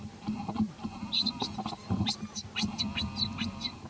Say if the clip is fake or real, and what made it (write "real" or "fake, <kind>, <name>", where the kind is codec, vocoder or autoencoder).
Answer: real